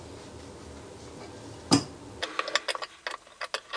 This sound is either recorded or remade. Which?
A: recorded